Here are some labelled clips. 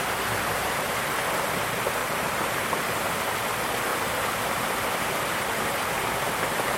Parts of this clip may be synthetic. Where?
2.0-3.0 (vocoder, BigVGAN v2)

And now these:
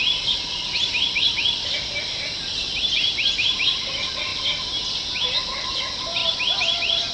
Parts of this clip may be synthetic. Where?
0.0-4.3 (vocoder, BigVGAN v2); 5.4-6.2